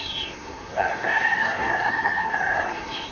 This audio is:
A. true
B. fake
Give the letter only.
B